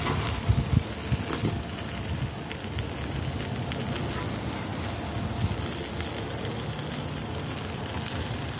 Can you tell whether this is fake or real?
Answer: real